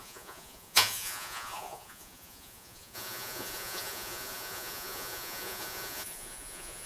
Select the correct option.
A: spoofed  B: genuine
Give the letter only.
A